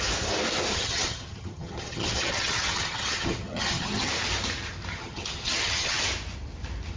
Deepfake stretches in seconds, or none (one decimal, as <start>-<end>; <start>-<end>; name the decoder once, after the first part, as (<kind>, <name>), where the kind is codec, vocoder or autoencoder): 0.7-4.1 (vocoder, HiFi-GAN); 4.9-6.0